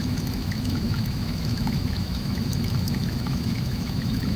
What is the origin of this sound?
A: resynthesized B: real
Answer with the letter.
A